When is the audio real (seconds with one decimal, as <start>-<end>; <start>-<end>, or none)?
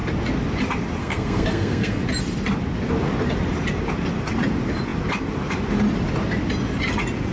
0.0-1.0; 2.0-7.3